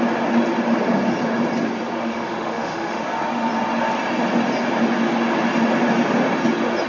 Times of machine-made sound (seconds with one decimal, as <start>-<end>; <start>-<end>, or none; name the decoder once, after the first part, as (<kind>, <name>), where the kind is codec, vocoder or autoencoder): 2.0-3.0 (autoencoder, DAC-VAE)